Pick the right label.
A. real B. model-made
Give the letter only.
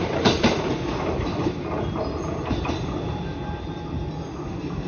A